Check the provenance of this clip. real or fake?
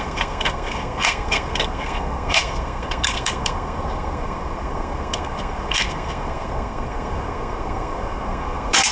fake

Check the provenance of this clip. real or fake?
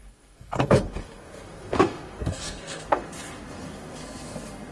fake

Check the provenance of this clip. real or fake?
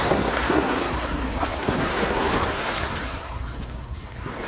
fake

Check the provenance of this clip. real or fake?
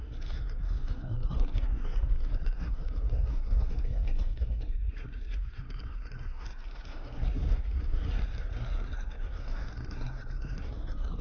fake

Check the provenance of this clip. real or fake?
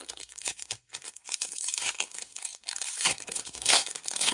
fake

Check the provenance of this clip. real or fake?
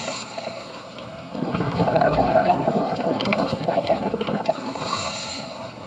fake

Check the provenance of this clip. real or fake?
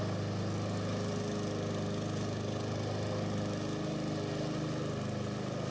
real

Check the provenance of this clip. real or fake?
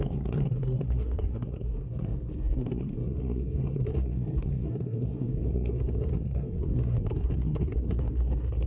fake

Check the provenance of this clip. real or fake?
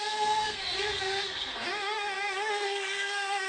fake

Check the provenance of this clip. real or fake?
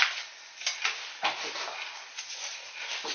real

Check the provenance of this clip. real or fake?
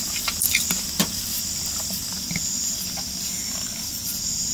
real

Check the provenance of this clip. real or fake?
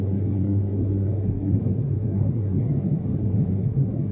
fake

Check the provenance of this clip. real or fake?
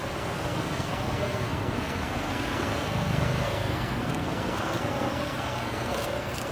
fake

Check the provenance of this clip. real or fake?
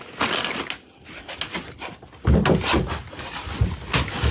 real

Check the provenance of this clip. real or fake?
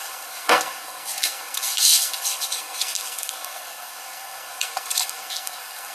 fake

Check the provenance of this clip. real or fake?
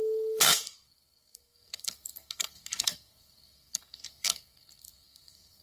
fake